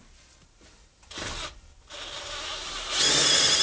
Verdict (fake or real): real